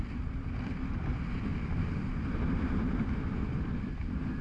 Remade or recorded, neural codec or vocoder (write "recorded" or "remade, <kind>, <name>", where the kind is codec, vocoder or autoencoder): recorded